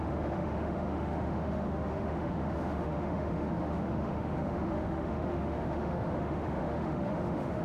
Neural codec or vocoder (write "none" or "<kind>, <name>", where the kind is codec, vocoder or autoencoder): autoencoder, DAC-VAE